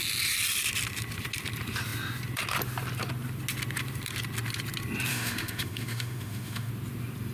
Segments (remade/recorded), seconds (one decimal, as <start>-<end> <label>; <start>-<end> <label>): 0.0-5.1 recorded; 5.1-6.7 remade; 6.7-7.3 recorded